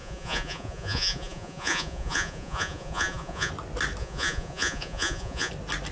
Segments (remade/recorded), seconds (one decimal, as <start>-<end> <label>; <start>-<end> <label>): 0.0-3.5 remade; 3.5-4.0 recorded; 4.0-5.5 remade; 5.5-5.9 recorded